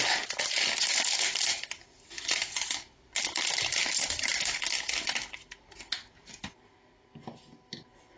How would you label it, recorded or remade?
recorded